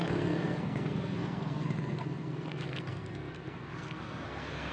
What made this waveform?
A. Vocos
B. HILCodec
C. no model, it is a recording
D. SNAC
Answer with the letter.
D